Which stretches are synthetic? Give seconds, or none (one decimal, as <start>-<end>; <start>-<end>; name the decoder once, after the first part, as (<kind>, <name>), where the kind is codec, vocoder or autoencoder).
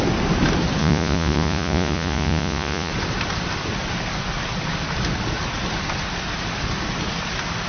0.8-2.9 (vocoder, Vocos)